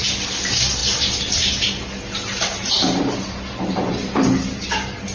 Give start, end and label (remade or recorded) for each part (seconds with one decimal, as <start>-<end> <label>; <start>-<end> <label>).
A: 0.0-5.1 recorded

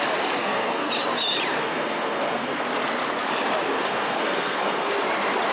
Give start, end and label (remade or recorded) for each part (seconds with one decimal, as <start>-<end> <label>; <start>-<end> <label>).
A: 0.0-0.4 recorded; 0.4-0.9 remade; 0.9-1.6 recorded; 1.6-2.6 remade; 2.6-3.7 recorded; 3.7-4.9 remade; 4.9-5.5 recorded